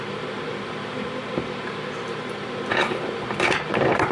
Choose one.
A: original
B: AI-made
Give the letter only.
B